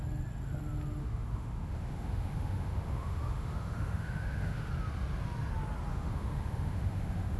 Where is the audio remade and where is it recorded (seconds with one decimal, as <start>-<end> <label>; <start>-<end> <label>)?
0.0-1.0 recorded; 1.0-4.7 remade; 4.7-5.9 recorded; 5.9-7.4 remade